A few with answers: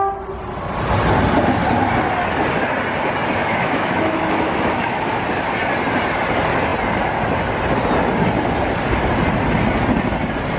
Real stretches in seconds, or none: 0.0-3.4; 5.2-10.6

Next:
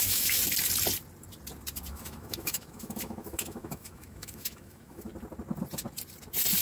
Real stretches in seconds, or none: 0.4-1.9; 5.1-6.6